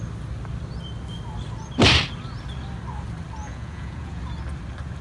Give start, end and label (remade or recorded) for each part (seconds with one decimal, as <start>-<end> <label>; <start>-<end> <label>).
0.0-3.4 recorded; 3.4-4.2 remade; 4.2-5.0 recorded